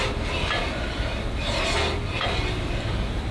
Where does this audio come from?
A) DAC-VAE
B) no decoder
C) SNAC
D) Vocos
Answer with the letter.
B